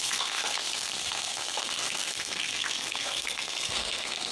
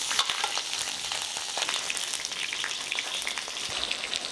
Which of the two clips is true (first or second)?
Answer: second